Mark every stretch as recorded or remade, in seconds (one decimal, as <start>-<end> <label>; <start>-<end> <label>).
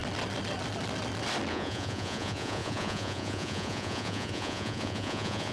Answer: 0.0-1.5 recorded; 1.5-5.5 remade